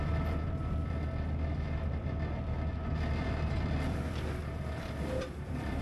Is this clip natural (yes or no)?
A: no